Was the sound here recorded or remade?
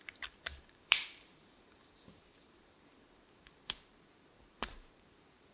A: remade